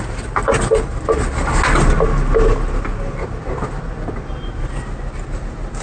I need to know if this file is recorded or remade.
recorded